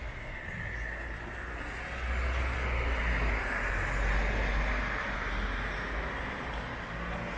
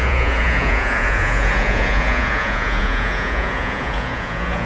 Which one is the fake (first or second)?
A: second